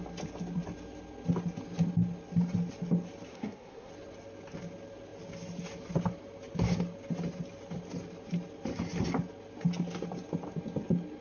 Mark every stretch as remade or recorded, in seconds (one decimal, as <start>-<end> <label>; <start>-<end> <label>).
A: 0.0-3.3 recorded; 3.3-3.9 remade; 3.9-11.2 recorded